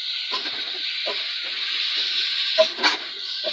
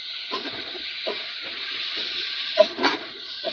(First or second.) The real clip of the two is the first